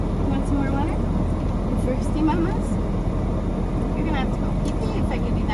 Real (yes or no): yes